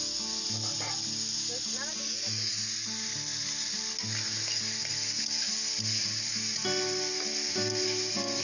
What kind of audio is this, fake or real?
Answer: real